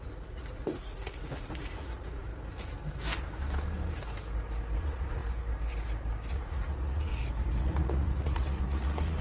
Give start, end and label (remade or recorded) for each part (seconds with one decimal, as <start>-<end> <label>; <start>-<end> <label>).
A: 0.0-2.3 remade; 2.3-4.8 recorded; 4.8-5.2 remade; 5.2-6.3 recorded; 6.3-7.1 remade; 7.1-7.6 recorded; 7.6-9.2 remade